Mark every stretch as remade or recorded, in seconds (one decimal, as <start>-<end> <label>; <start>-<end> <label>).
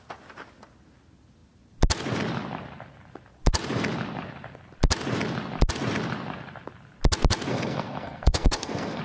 0.0-7.5 recorded; 7.5-9.0 remade